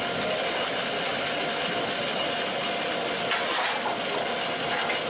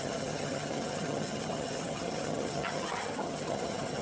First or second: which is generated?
second